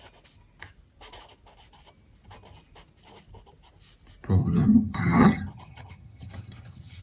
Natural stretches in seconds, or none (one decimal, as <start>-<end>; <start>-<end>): 0.0-4.4